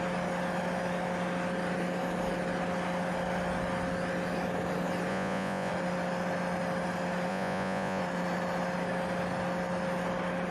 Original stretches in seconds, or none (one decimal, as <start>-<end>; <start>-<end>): 0.0-5.1; 5.7-7.3; 8.0-10.5